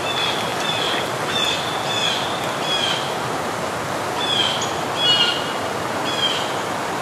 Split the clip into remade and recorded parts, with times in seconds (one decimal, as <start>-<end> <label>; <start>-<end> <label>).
0.0-7.0 recorded